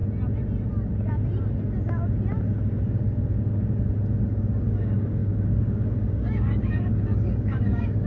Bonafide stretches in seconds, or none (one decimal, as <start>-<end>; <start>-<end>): 0.0-4.6

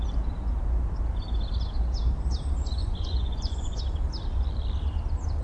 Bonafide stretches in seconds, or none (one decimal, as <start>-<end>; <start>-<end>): 0.0-2.8; 3.8-5.4

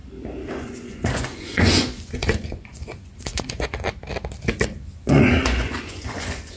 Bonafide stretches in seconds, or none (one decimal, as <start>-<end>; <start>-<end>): 0.0-0.5; 4.0-5.0

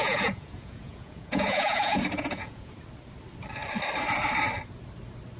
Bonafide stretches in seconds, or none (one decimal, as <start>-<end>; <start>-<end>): 2.8-5.4